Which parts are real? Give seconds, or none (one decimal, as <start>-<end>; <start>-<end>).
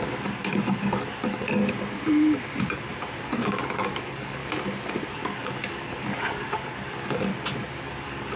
1.6-3.2; 4.4-5.1; 7.3-7.9